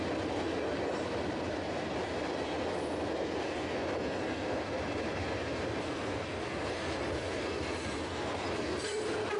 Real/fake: real